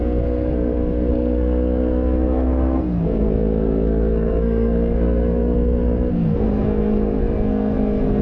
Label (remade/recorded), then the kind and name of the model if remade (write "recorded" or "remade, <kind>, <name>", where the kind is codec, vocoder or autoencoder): remade, codec, SNAC